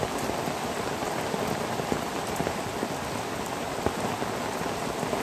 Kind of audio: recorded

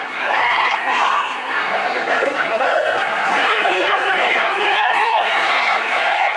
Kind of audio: remade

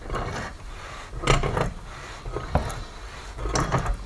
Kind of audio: recorded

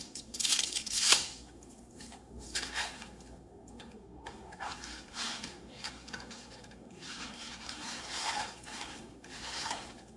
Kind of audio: remade